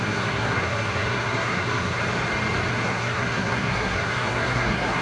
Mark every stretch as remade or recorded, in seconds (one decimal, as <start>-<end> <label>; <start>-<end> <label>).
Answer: 0.0-2.0 remade; 2.0-2.7 recorded; 2.7-5.0 remade